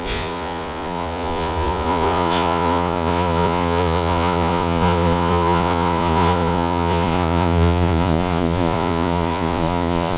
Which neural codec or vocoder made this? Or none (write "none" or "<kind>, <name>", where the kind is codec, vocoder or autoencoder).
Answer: vocoder, Vocos